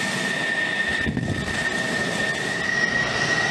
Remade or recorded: recorded